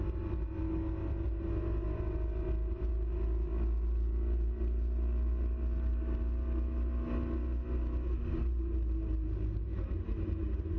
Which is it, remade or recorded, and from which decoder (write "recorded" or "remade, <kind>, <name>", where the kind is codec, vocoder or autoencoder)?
recorded